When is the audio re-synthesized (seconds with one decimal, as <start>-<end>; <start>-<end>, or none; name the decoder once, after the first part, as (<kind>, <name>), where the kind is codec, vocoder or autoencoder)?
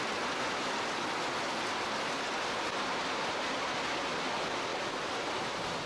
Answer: none